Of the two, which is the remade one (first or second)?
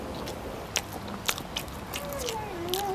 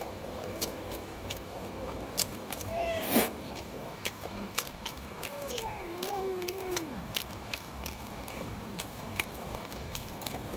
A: second